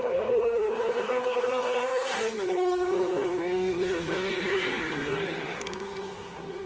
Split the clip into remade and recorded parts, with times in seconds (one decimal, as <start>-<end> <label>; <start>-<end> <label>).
0.0-6.7 remade